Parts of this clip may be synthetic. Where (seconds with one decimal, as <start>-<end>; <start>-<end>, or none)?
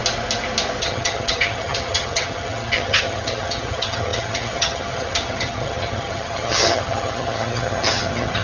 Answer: 0.8-8.4